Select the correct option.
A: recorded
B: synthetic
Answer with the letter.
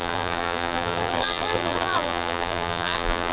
B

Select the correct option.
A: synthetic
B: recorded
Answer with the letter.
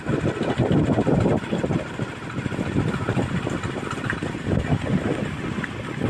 B